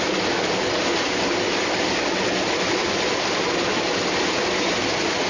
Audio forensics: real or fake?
real